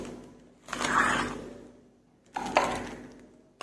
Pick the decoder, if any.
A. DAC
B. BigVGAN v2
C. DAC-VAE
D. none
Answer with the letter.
D